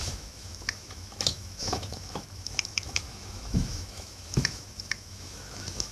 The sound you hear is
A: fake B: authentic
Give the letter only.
A